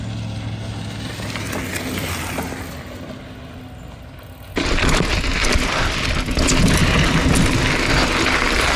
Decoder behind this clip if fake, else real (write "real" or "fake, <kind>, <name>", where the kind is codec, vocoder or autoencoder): real